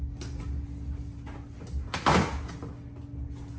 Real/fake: real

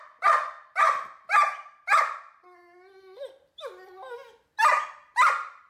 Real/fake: real